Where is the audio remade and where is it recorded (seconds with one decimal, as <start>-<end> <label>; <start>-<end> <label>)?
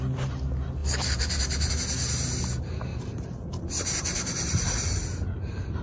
0.0-0.8 recorded; 0.8-1.7 remade; 1.7-2.9 recorded; 2.9-5.8 remade